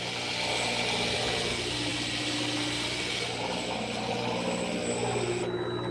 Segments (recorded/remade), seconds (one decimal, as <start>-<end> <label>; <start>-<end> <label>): 0.0-1.9 recorded; 1.9-5.4 remade; 5.4-5.9 recorded